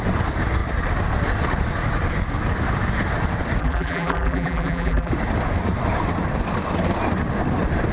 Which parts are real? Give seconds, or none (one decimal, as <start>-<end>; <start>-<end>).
0.0-3.6; 5.1-7.9